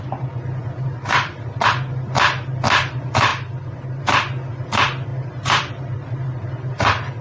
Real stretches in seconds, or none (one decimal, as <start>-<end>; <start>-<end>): 0.0-7.2